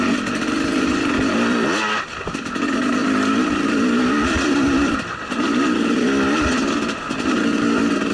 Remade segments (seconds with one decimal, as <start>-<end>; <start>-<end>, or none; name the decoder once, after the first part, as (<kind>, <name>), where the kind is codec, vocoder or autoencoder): none